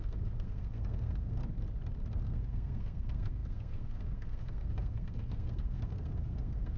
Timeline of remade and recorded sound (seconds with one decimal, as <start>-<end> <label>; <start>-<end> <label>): 0.0-1.4 remade; 1.4-2.2 recorded; 2.2-6.8 remade